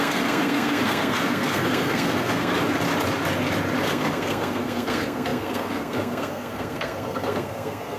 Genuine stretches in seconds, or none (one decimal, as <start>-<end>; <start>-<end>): 2.5-3.8